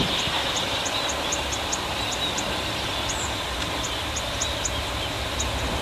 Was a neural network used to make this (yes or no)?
no